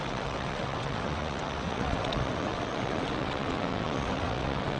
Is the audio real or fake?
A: fake